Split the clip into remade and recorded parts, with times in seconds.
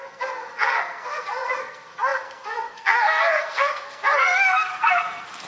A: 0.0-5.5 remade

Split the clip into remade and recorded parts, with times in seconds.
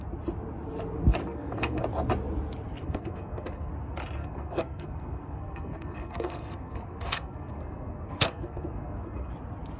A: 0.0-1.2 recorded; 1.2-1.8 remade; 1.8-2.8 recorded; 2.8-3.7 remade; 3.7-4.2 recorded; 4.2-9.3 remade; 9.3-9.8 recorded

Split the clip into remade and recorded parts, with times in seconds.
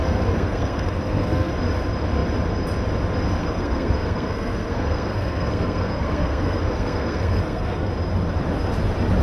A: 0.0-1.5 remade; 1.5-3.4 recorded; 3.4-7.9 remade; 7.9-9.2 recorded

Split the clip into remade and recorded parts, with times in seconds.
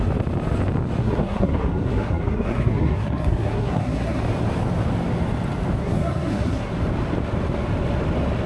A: 0.0-1.0 recorded; 1.0-4.2 remade; 4.2-5.8 recorded; 5.8-6.7 remade; 6.7-8.5 recorded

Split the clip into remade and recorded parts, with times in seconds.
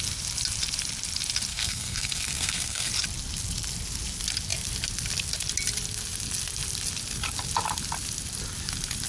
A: 0.0-1.5 recorded; 1.5-2.9 remade; 2.9-9.1 recorded